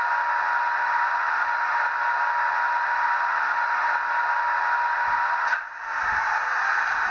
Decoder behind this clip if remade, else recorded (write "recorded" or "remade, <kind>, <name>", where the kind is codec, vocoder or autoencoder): recorded